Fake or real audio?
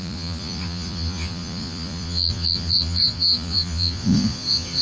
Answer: fake